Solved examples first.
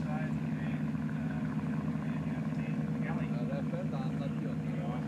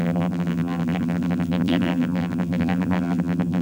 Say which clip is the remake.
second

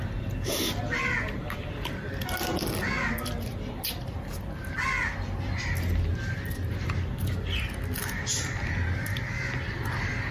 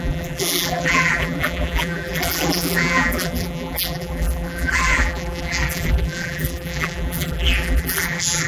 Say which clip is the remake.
second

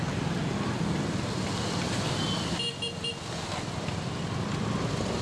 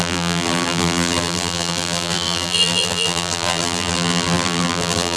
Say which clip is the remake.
second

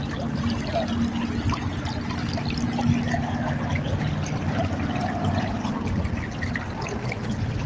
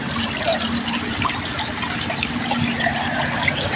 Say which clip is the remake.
second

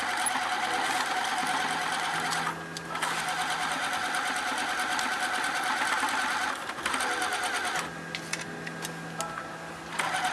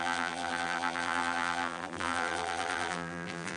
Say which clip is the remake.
second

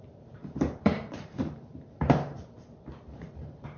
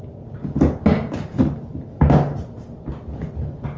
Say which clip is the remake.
first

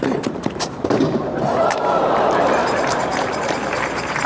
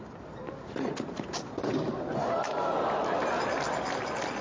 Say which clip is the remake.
first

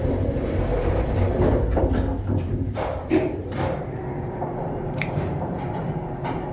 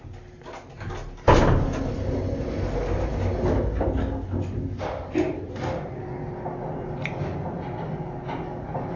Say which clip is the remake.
first